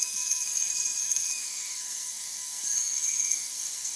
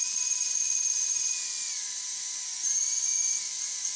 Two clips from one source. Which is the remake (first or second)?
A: first